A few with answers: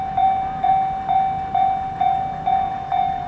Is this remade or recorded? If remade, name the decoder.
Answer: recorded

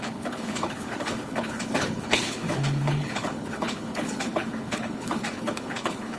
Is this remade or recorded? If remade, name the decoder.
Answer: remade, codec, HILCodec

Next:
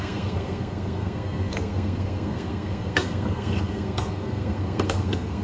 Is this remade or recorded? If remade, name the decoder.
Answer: remade, codec, SNAC